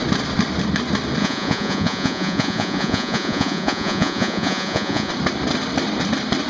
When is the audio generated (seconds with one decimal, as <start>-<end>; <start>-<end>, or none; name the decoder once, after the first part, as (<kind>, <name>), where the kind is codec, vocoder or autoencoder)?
1.2-5.1 (vocoder, Vocos)